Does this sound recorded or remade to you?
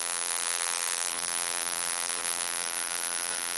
remade